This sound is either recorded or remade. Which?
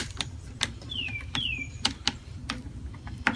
remade